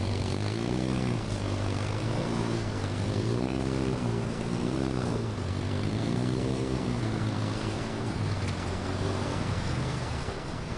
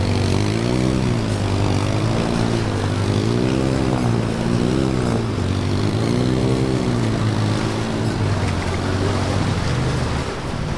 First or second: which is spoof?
first